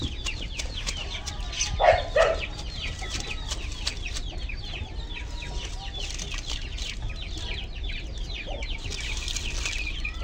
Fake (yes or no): no